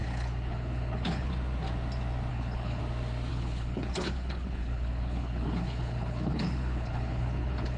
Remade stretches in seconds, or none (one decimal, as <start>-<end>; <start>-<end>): 0.0-1.3; 2.3-2.8; 3.3-7.8

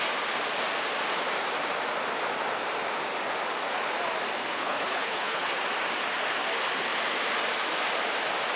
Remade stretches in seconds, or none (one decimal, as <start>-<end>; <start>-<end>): 4.5-5.5

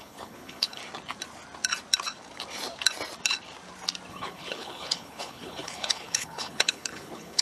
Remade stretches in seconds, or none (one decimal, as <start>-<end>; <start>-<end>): 0.0-0.8; 4.1-7.4

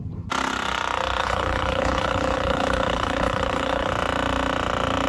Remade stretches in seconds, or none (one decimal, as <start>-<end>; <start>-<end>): 1.2-3.9

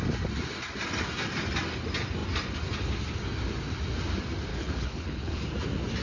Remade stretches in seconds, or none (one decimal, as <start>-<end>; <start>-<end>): 4.5-5.4

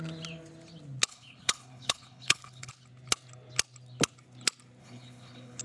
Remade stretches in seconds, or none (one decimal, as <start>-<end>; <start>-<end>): 1.1-2.7; 4.8-5.6

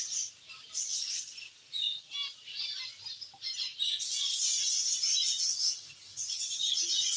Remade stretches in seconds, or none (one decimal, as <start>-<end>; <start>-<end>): 5.5-6.5